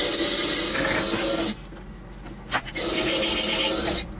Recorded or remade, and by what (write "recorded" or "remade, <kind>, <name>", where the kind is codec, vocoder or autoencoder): recorded